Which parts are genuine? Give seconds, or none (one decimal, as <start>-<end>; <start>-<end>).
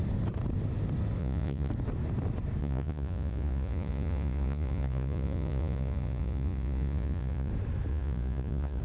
0.0-1.2; 1.7-2.6; 7.5-7.9